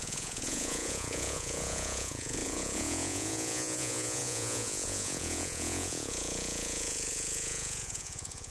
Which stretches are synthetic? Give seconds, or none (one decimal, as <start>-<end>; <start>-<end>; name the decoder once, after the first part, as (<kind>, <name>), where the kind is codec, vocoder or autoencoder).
0.0-8.5 (vocoder, Vocos)